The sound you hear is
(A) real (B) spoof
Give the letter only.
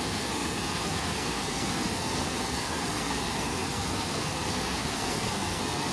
B